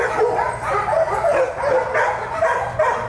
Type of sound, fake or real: real